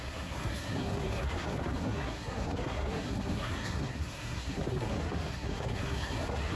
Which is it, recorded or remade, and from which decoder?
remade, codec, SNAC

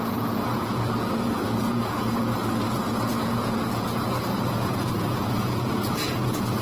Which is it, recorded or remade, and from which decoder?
remade, vocoder, Vocos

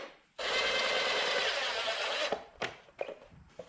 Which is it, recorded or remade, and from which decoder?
remade, vocoder, BigVGAN v2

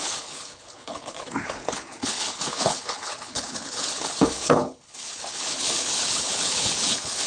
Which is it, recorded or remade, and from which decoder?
remade, codec, HILCodec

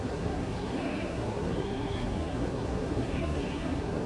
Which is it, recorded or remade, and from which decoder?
remade, codec, SNAC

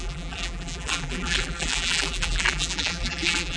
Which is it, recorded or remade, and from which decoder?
remade, vocoder, BigVGAN v2